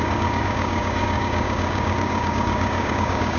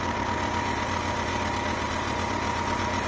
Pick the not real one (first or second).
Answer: first